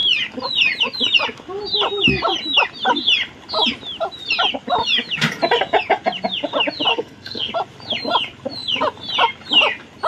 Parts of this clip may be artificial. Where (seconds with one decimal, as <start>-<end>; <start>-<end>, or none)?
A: 6.9-7.5